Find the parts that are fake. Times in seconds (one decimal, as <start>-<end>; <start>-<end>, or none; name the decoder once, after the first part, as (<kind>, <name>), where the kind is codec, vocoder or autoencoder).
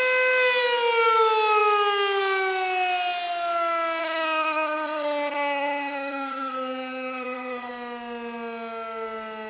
4.0-7.7 (vocoder, HiFi-GAN)